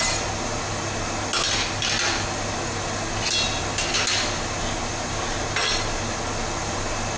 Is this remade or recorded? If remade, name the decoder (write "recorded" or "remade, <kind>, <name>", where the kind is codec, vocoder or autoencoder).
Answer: recorded